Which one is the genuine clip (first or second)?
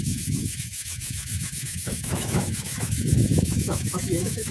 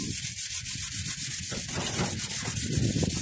second